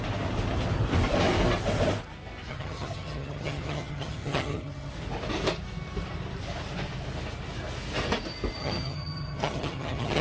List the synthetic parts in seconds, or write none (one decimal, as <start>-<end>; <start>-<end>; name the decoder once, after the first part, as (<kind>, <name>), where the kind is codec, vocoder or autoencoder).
2.5-4.9 (vocoder, HiFi-GAN); 8.6-10.2